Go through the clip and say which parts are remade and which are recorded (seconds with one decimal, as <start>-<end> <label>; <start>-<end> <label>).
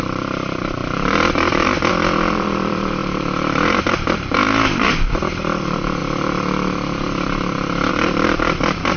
0.0-6.0 remade; 6.0-7.9 recorded; 7.9-9.0 remade